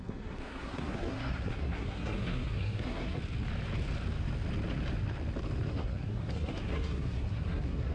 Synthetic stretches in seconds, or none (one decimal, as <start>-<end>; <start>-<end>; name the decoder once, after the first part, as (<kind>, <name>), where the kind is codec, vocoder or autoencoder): 0.0-3.2 (codec, SNAC); 5.7-7.9